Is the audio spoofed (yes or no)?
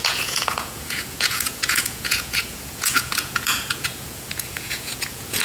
yes